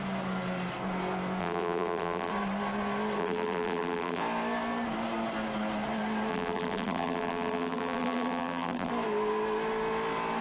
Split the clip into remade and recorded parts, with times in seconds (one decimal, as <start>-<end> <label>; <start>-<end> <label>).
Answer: 0.0-1.4 recorded; 1.4-2.3 remade; 2.3-3.2 recorded; 3.2-4.2 remade; 4.2-6.3 recorded; 6.3-8.9 remade; 8.9-10.4 recorded